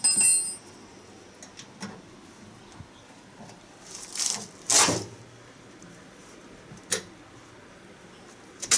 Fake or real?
real